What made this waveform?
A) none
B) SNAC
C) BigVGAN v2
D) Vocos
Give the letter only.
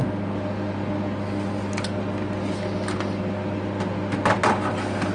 A